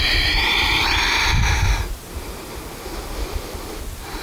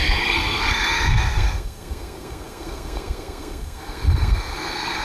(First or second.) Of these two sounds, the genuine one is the first